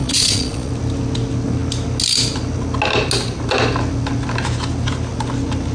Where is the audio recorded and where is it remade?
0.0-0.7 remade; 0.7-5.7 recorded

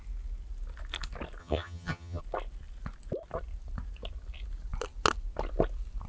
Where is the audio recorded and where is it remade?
0.0-1.4 recorded; 1.4-2.2 remade; 2.2-6.1 recorded

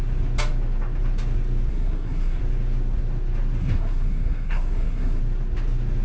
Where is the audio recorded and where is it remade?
0.0-1.7 recorded; 1.7-2.4 remade; 2.4-3.6 recorded; 3.6-5.2 remade; 5.2-6.0 recorded

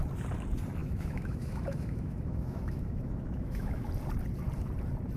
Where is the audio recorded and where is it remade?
0.0-0.8 recorded; 0.8-3.9 remade; 3.9-5.2 recorded

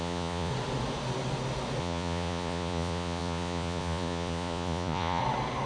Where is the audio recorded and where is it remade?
0.0-0.5 remade; 0.5-1.8 recorded; 1.8-5.2 remade; 5.2-5.7 recorded

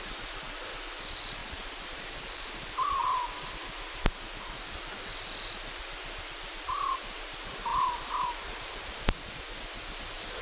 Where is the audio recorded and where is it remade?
0.0-1.4 recorded; 1.4-2.9 remade; 2.9-7.7 recorded; 7.7-9.4 remade; 9.4-10.4 recorded

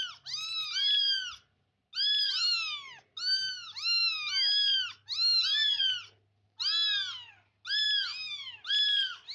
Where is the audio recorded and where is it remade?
0.0-9.3 recorded